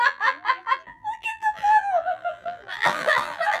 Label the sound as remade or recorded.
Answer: remade